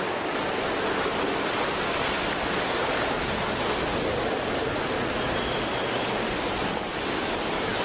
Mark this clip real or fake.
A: real